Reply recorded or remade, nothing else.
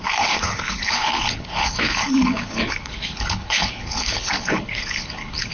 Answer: remade